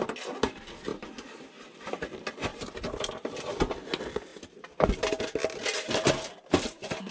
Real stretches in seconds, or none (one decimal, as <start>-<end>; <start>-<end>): 0.0-0.9; 1.5-2.5; 3.3-7.1